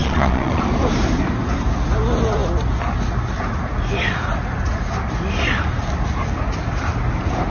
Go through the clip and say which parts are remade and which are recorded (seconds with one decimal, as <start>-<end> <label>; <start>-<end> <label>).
0.0-0.6 remade; 0.6-7.5 recorded